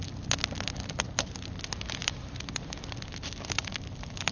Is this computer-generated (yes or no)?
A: no